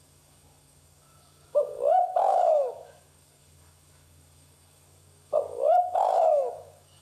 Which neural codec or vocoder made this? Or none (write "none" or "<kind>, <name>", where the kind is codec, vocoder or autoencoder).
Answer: codec, DAC